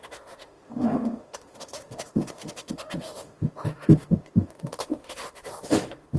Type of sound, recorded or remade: remade